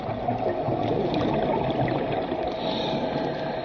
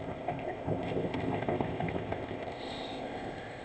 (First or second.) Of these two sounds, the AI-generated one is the second